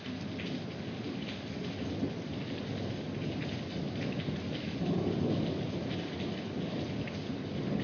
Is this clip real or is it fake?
real